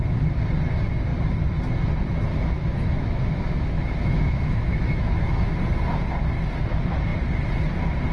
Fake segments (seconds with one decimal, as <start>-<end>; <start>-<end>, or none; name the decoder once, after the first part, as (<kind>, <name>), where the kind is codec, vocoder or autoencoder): 2.3-5.6 (autoencoder, DAC-VAE)